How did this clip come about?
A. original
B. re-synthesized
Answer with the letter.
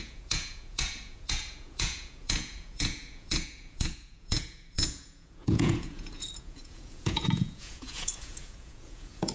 B